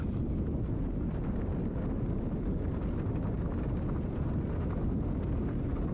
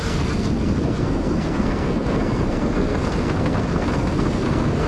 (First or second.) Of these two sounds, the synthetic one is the second